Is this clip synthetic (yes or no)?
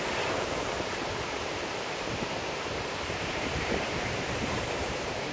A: yes